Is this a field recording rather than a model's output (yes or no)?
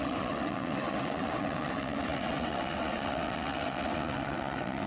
no